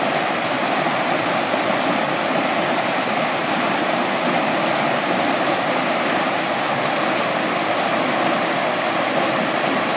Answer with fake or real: real